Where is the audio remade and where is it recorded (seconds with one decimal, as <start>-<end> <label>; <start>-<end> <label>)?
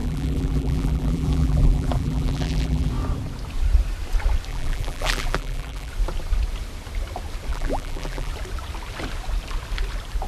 0.0-2.9 remade; 2.9-4.5 recorded; 4.5-5.9 remade; 5.9-7.5 recorded; 7.5-8.3 remade; 8.3-10.3 recorded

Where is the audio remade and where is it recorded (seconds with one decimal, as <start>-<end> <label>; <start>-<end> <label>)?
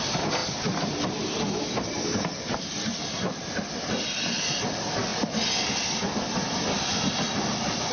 0.0-0.4 recorded; 0.4-1.6 remade; 1.6-2.1 recorded; 2.1-3.4 remade; 3.4-7.9 recorded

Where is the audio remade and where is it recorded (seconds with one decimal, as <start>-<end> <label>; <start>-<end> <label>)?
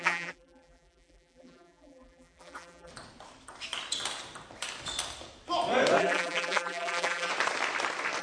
0.0-2.9 remade; 2.9-6.0 recorded; 6.0-7.3 remade; 7.3-8.2 recorded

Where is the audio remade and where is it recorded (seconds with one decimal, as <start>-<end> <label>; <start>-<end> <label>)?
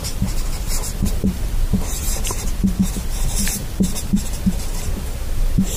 0.0-5.8 remade